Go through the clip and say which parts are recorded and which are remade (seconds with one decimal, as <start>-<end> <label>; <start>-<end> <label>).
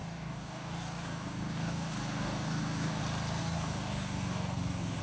0.0-3.0 remade; 3.0-3.4 recorded; 3.4-5.0 remade